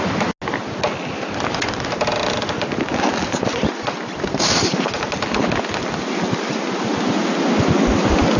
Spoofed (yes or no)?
no